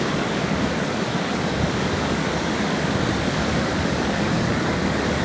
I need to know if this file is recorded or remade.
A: remade